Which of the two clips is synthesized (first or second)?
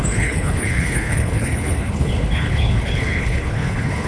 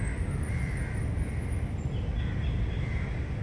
first